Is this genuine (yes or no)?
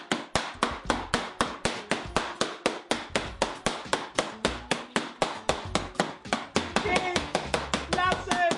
yes